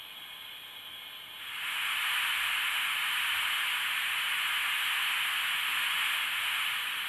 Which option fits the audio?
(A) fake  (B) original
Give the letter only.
B